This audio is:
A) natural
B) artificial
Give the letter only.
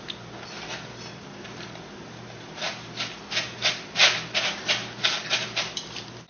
A